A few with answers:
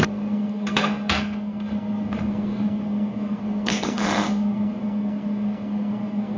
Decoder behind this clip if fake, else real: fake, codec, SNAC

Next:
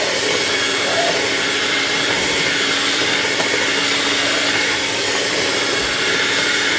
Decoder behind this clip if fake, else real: real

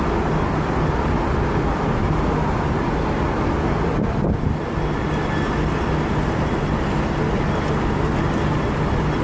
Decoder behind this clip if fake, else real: real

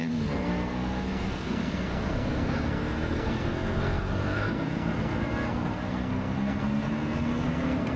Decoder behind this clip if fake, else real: fake, codec, SNAC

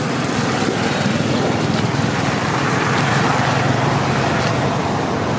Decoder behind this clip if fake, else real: real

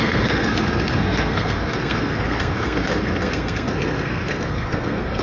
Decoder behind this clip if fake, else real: fake, codec, SNAC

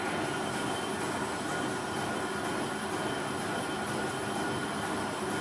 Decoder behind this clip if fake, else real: real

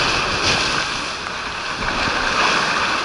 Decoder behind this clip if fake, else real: real